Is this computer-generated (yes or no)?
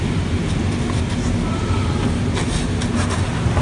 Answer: no